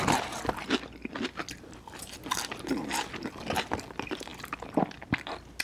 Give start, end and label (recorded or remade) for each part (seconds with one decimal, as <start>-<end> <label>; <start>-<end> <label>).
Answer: 0.0-5.6 recorded